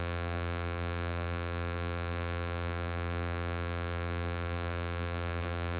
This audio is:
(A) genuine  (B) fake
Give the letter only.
B